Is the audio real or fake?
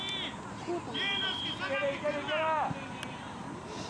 real